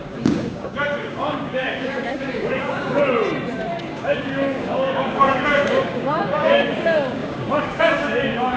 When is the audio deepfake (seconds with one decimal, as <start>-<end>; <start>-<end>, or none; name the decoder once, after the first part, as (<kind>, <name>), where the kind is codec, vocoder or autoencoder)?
0.0-3.0 (codec, DAC); 3.8-8.6